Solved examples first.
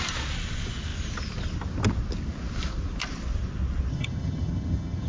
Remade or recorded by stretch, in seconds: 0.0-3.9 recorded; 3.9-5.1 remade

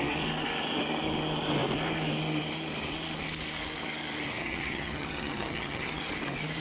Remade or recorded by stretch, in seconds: 0.0-4.4 recorded; 4.4-6.0 remade; 6.0-6.6 recorded